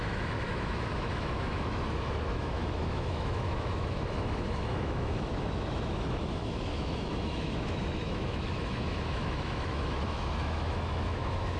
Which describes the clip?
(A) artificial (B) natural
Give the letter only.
A